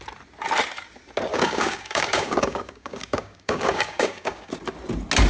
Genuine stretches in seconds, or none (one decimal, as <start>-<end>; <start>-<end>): 0.0-1.3; 4.5-5.3

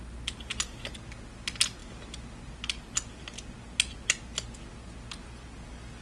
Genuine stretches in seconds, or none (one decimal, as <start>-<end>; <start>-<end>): 0.0-6.0

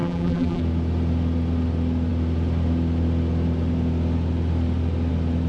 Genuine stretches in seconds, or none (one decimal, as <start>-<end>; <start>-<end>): 0.6-5.5

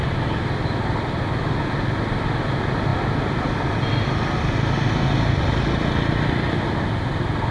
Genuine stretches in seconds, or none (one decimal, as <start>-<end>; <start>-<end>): 0.0-7.5

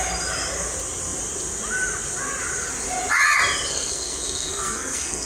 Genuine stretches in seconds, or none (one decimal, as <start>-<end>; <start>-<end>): 0.0-3.7

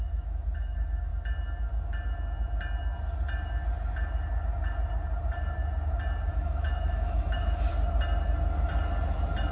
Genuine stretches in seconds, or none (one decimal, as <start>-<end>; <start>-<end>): 1.1-6.3; 7.7-9.5

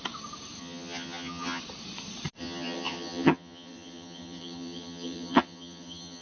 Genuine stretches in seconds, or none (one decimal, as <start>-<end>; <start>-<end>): 0.0-0.6; 1.6-2.4